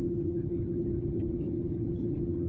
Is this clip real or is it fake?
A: fake